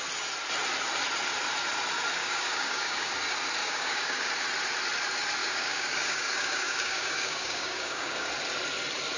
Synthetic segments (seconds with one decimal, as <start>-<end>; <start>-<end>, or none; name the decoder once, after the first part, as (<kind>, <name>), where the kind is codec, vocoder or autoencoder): 2.2-3.1 (codec, DAC); 3.6-4.3; 5.4-8.3